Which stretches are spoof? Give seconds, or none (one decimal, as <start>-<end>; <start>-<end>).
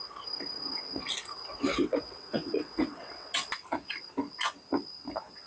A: 1.8-3.3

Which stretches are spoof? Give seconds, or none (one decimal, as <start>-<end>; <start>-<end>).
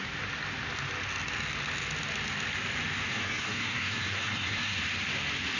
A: 3.1-4.8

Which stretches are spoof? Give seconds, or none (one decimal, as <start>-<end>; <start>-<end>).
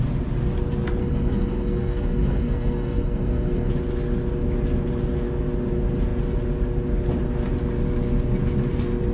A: 1.0-3.7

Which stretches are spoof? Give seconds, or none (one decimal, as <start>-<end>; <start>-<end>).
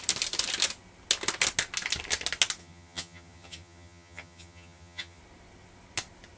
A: 2.6-5.2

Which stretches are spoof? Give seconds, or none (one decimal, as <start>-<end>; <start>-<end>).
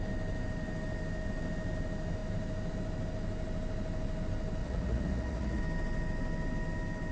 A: 4.6-5.6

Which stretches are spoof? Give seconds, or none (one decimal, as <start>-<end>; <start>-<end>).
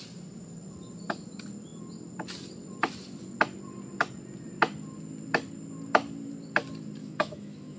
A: 7.0-7.8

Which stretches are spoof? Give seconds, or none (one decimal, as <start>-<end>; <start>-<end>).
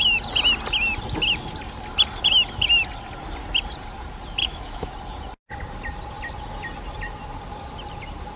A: 4.4-4.9